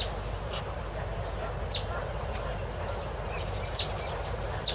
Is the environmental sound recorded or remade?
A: recorded